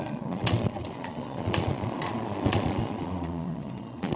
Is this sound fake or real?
fake